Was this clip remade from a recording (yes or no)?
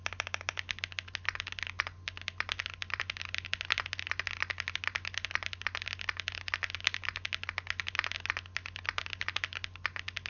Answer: no